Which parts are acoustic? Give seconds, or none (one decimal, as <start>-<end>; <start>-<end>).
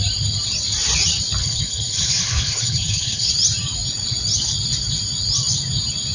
0.0-1.4; 3.3-6.1